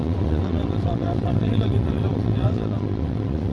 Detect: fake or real fake